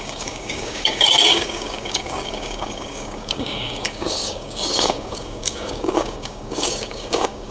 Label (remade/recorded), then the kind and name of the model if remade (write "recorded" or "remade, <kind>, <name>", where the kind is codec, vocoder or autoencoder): remade, codec, DAC